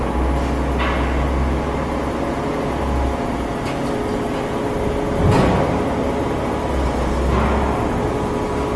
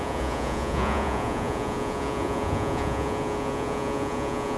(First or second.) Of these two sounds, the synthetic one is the second